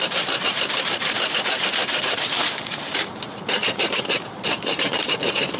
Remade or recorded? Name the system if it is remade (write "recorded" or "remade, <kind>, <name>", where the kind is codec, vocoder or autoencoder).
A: remade, vocoder, BigVGAN v2